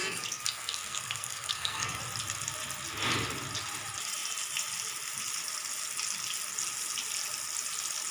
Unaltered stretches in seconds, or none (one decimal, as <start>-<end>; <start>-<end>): 2.0-8.1